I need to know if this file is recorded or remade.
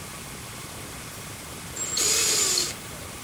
recorded